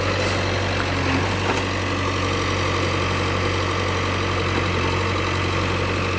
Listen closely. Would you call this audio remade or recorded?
recorded